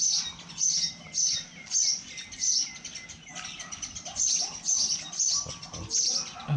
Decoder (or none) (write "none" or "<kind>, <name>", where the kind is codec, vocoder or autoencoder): none